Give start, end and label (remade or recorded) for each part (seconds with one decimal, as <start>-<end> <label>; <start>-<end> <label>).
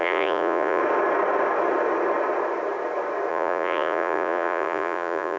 0.0-0.8 remade; 0.8-3.3 recorded; 3.3-5.4 remade